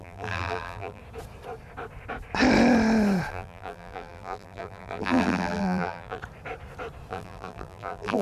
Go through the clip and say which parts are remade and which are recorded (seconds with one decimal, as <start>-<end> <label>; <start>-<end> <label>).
0.0-1.0 remade; 1.0-3.3 recorded; 3.3-6.2 remade; 6.2-7.1 recorded; 7.1-8.2 remade